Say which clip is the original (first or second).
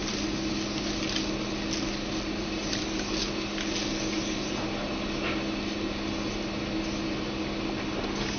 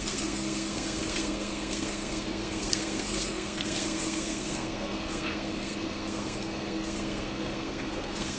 first